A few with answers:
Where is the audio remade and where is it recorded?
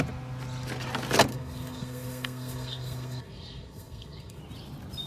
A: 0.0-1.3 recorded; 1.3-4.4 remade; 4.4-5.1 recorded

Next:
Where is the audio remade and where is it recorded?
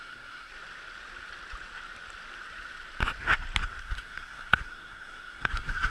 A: 0.0-0.5 remade; 0.5-3.8 recorded; 3.8-5.9 remade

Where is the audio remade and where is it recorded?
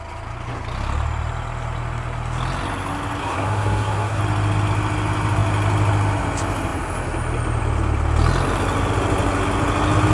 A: 0.0-3.2 recorded; 3.2-4.2 remade; 4.2-10.1 recorded